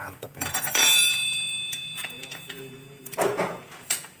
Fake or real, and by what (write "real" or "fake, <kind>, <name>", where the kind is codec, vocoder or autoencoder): fake, vocoder, Vocos